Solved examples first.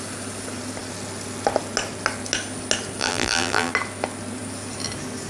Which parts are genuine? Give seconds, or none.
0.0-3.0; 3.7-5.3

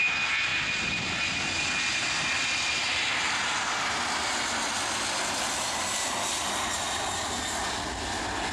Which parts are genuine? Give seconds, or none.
0.0-8.5